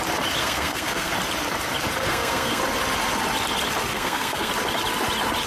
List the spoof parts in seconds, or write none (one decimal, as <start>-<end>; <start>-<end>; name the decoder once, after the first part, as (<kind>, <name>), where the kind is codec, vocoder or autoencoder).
0.4-1.1 (codec, SNAC); 2.0-2.6; 3.9-4.5